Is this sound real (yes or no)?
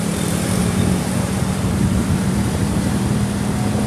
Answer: no